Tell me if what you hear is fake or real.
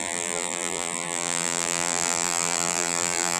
fake